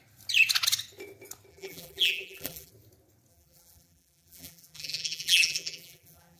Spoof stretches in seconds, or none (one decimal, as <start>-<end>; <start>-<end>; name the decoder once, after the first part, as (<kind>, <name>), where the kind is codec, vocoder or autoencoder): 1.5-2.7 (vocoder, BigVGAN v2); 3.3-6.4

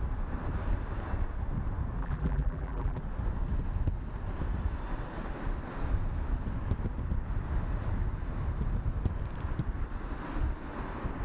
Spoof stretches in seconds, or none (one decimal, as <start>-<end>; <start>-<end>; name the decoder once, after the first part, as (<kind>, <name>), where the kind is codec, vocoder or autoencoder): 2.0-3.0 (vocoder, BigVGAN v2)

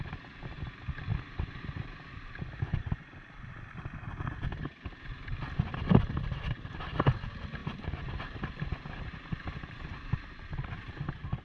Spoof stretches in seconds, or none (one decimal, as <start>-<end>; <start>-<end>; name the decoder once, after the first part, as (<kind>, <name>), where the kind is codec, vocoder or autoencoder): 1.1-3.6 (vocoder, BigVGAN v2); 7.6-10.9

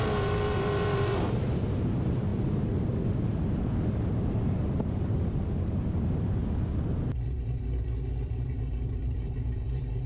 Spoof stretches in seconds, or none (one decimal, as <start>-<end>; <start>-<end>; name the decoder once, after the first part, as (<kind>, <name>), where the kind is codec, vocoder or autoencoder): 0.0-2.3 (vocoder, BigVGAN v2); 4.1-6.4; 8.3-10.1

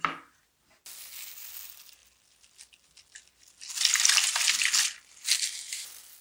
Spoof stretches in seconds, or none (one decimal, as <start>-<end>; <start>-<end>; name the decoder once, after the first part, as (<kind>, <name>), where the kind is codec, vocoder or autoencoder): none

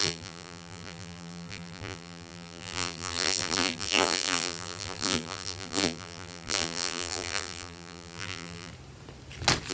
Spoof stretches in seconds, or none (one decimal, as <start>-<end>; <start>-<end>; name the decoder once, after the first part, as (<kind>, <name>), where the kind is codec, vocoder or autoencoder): 0.0-8.7 (vocoder, BigVGAN v2)

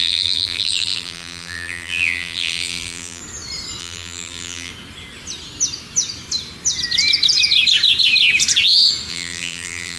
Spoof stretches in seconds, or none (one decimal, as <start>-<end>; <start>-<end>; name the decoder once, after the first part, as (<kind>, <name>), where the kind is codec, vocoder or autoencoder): 0.0-3.2 (vocoder, BigVGAN v2); 3.8-4.7; 9.1-10.0